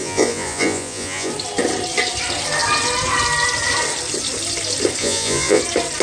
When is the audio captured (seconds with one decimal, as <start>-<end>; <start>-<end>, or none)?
1.3-5.0; 5.6-6.0